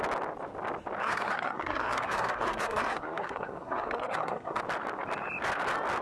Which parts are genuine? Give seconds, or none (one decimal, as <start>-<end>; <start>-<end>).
0.0-1.0; 4.6-6.0